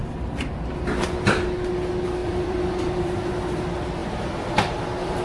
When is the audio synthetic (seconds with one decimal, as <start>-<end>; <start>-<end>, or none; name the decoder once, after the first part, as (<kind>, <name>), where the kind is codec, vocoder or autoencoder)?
2.2-3.3 (vocoder, BigVGAN v2); 4.0-5.2